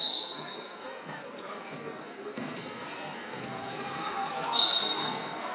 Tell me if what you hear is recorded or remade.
remade